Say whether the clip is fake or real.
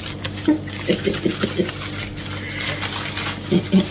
real